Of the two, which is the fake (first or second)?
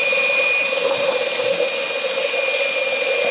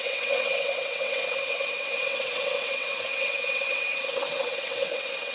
second